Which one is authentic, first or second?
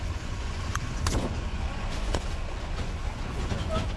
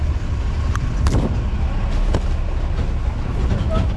second